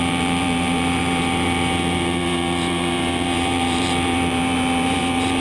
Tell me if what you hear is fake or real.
fake